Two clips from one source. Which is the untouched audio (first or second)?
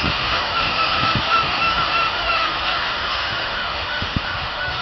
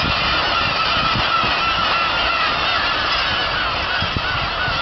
second